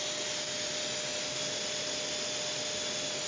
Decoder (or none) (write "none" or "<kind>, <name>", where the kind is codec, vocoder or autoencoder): none